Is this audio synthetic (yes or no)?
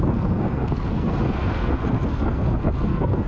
yes